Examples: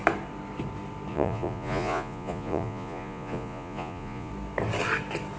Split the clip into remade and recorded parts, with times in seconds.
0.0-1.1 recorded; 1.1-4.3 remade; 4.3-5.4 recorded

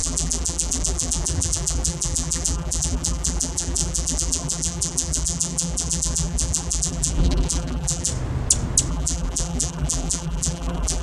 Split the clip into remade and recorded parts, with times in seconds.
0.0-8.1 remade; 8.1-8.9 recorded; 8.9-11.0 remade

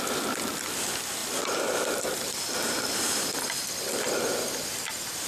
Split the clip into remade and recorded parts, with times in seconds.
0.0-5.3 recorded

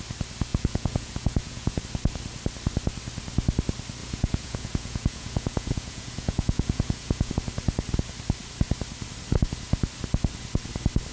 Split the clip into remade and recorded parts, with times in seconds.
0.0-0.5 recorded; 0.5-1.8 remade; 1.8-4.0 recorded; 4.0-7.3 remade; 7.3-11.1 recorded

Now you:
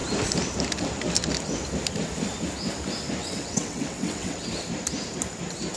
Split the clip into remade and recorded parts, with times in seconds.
0.0-3.2 recorded; 3.2-4.4 remade; 4.4-5.8 recorded

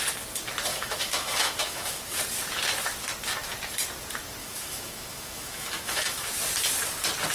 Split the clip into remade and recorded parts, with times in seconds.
0.0-0.7 recorded; 0.7-2.2 remade; 2.2-4.4 recorded; 4.4-6.3 remade; 6.3-7.3 recorded

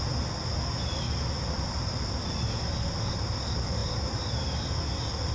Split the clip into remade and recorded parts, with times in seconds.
0.0-5.3 recorded